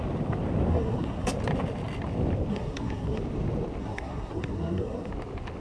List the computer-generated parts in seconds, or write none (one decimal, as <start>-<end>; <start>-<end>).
0.7-1.3; 2.5-3.2; 3.8-5.1

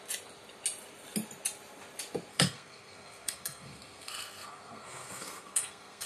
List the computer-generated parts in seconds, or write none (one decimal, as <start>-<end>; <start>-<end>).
2.3-6.1

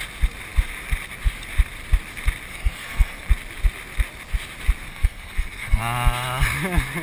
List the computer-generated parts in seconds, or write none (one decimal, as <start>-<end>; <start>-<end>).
2.5-3.3; 4.9-5.8

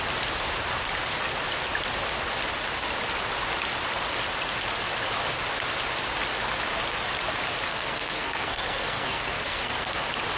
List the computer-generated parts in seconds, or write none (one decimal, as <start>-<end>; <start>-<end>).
7.7-10.0

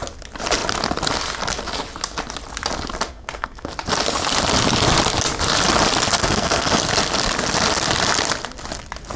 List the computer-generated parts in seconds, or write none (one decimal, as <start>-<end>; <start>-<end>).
3.1-3.7; 6.1-6.8

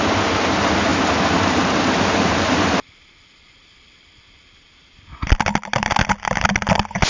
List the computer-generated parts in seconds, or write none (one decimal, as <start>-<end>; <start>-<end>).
none

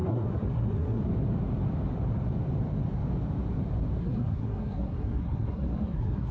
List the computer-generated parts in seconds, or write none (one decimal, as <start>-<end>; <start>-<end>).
0.0-1.0; 4.0-6.3

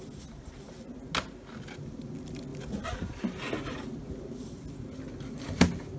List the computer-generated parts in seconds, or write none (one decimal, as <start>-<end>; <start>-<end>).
none